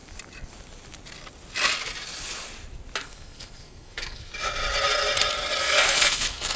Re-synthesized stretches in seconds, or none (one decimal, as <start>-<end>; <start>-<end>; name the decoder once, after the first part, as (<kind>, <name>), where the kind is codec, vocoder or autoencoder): 3.0-4.3 (codec, SNAC); 5.6-6.6